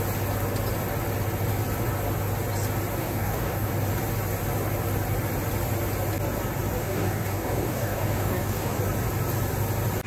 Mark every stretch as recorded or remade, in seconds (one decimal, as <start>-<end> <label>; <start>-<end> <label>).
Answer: 0.0-3.0 recorded; 3.0-3.7 remade; 3.7-6.8 recorded; 6.8-8.8 remade; 8.8-10.1 recorded